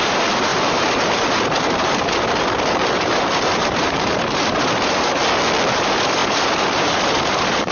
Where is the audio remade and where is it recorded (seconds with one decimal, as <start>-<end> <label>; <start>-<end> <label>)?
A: 0.0-5.2 remade; 5.2-5.7 recorded; 5.7-7.7 remade